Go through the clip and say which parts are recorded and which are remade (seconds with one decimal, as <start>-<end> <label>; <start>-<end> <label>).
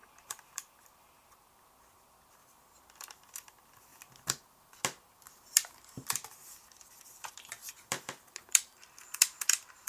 0.0-9.9 recorded